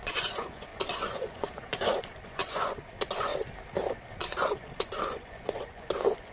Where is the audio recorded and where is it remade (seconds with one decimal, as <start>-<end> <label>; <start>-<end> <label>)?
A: 0.0-3.3 remade; 3.3-4.2 recorded; 4.2-6.3 remade